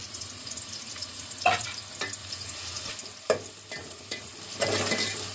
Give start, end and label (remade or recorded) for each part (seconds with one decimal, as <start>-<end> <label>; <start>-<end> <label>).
0.0-1.7 remade; 1.7-2.2 recorded; 2.2-2.9 remade; 2.9-3.8 recorded; 3.8-4.3 remade; 4.3-5.3 recorded